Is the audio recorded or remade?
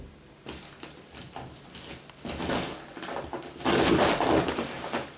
recorded